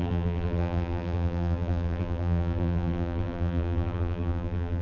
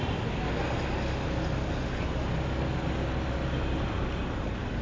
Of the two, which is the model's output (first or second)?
first